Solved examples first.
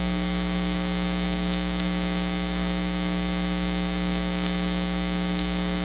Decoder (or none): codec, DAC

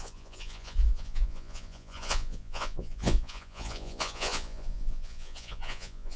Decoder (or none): vocoder, Vocos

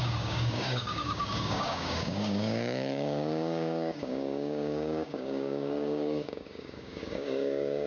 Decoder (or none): codec, DAC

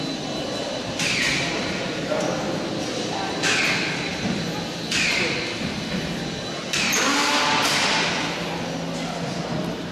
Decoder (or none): none